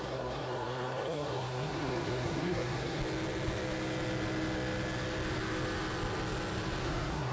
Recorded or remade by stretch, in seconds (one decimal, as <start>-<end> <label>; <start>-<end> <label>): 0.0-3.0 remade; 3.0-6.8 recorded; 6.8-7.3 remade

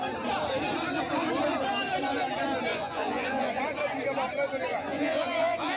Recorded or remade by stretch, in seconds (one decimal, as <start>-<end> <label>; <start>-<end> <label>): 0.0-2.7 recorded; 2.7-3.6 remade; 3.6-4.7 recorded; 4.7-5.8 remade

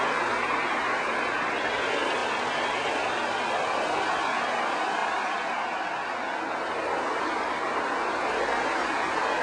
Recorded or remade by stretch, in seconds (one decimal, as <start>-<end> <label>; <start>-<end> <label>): 0.0-9.4 recorded

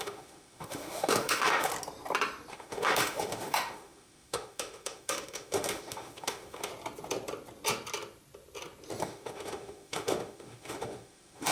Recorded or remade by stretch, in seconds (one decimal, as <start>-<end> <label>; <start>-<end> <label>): 0.0-1.7 remade; 1.7-2.5 recorded; 2.5-6.7 remade; 6.7-9.0 recorded; 9.0-11.5 remade

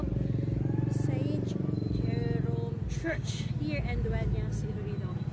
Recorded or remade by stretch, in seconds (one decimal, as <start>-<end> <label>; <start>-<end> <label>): 0.0-3.0 recorded; 3.0-3.5 remade; 3.5-5.3 recorded